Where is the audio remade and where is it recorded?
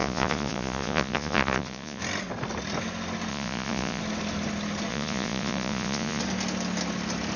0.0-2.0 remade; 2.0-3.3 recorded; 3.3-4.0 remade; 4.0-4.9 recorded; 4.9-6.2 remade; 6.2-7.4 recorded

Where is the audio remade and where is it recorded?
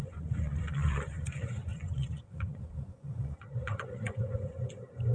0.0-5.1 remade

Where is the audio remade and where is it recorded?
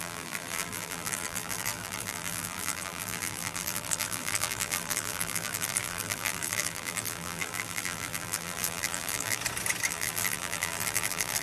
0.0-9.4 remade; 9.4-9.9 recorded; 9.9-11.4 remade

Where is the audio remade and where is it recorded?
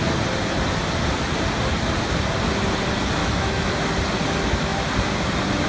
0.0-3.2 recorded; 3.2-3.7 remade; 3.7-5.7 recorded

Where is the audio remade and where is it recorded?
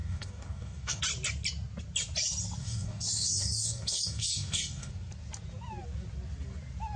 0.0-1.0 remade; 1.0-2.6 recorded; 2.6-4.9 remade; 4.9-7.0 recorded